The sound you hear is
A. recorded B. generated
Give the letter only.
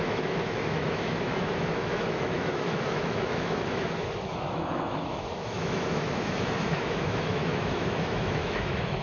B